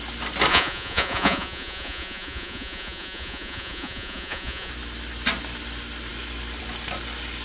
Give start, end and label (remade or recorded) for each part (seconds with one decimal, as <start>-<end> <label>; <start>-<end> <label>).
0.0-0.5 recorded; 0.5-4.7 remade; 4.7-7.4 recorded

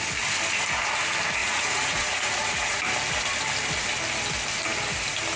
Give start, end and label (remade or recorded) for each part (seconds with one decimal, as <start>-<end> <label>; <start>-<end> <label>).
0.0-1.4 recorded; 1.4-2.8 remade; 2.8-5.4 recorded